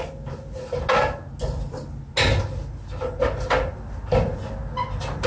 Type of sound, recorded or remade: recorded